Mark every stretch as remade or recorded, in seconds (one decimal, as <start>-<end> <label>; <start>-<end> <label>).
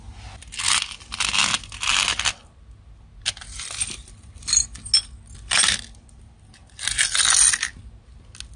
0.0-8.6 recorded